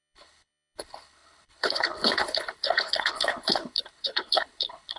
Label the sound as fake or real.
fake